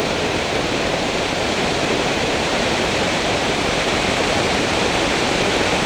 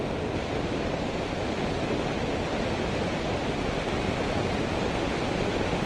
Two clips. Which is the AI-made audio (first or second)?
first